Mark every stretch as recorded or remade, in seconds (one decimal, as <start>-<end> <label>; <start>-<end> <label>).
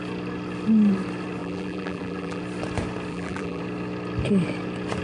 0.0-1.4 recorded; 1.4-2.4 remade; 2.4-3.1 recorded; 3.1-3.6 remade; 3.6-5.0 recorded